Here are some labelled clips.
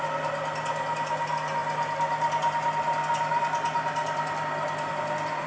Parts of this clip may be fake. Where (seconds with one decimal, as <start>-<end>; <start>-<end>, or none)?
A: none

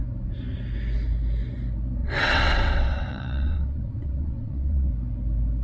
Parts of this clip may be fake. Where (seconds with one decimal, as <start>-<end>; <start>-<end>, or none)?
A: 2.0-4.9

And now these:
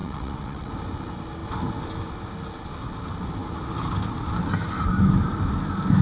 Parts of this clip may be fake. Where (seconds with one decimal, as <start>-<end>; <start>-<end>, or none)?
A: 0.0-0.7

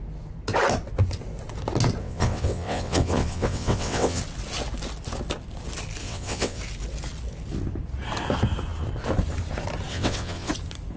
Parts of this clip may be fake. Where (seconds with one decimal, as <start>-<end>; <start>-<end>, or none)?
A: 2.0-4.2; 6.0-6.6; 9.9-10.5

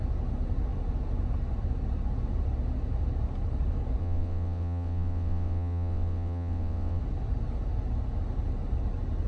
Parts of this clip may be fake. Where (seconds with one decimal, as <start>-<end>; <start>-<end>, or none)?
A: 4.0-7.0

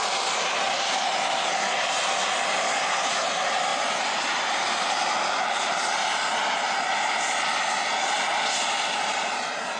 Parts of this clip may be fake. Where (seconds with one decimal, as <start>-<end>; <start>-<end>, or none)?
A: none

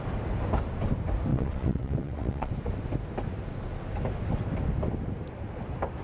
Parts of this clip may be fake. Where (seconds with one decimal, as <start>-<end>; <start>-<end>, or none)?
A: 1.3-2.5